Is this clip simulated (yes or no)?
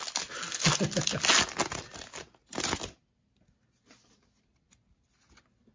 no